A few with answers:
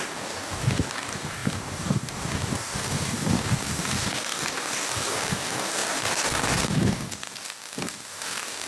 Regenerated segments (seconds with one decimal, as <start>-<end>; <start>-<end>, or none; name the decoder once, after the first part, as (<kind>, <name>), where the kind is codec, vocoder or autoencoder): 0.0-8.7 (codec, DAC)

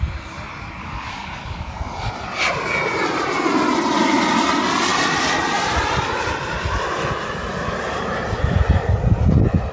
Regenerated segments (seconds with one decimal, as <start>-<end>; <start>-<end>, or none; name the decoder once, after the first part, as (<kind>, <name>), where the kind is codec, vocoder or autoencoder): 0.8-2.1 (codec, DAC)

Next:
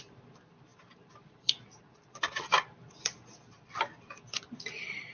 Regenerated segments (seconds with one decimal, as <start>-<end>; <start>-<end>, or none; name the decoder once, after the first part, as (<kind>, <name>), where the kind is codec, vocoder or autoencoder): none